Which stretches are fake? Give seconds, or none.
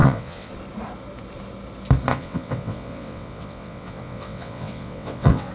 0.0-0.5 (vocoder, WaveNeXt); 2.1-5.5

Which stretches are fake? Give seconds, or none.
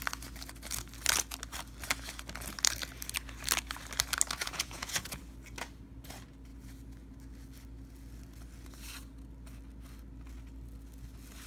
4.4-5.2 (vocoder, Vocos)